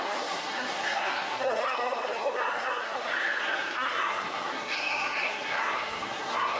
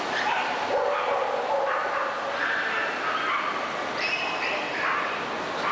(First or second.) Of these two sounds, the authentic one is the second